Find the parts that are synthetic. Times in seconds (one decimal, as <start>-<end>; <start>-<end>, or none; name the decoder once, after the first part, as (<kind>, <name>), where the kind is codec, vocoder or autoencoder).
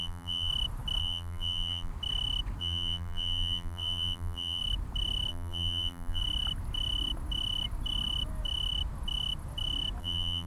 0.0-0.5 (vocoder, BigVGAN v2); 1.0-1.9; 2.6-4.6; 5.3-6.2; 10.0-10.5